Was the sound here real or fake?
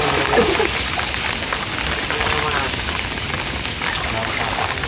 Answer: real